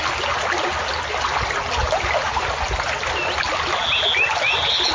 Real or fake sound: real